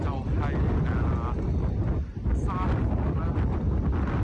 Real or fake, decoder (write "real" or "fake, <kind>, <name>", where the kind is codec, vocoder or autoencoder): real